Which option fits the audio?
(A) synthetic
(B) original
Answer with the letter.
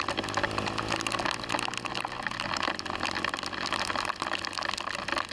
B